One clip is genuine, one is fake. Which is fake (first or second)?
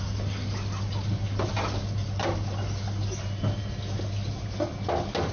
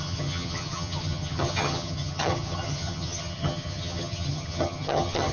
second